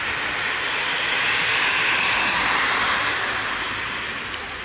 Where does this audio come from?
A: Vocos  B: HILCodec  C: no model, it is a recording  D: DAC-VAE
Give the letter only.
C